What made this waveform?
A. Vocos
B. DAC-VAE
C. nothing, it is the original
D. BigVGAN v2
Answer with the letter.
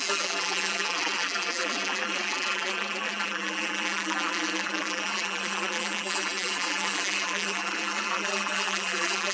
D